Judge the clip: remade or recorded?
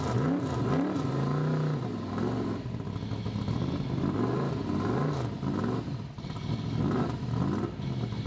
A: recorded